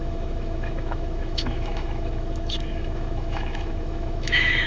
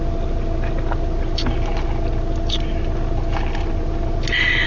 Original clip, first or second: second